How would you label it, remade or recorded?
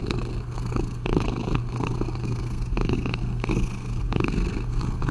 remade